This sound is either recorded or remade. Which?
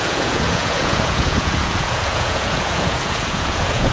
remade